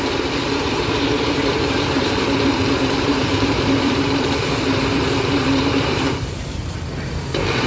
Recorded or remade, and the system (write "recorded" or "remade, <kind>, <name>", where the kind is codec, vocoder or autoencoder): remade, vocoder, BigVGAN v2